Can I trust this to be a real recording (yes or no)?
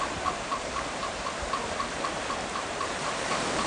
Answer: no